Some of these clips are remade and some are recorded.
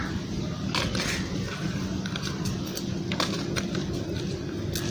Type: recorded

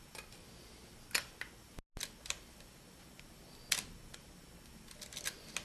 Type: recorded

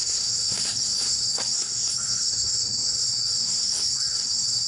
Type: remade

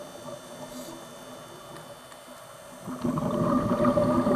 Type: recorded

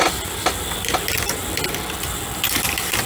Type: recorded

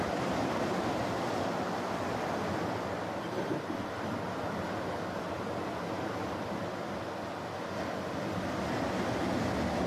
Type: recorded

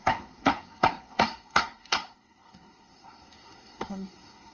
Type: remade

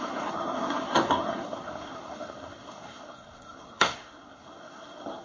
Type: remade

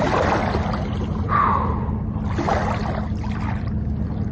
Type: recorded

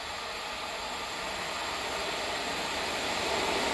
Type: recorded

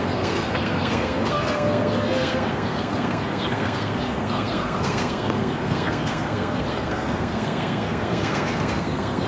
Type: remade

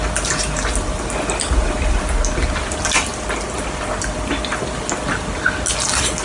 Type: recorded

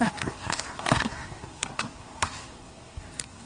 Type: remade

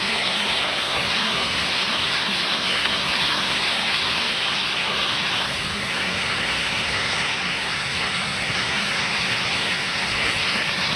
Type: remade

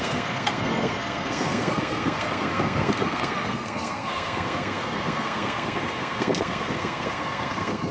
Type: remade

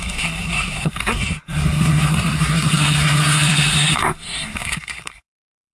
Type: remade